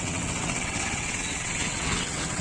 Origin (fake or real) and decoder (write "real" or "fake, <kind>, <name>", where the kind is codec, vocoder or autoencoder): fake, vocoder, WaveNeXt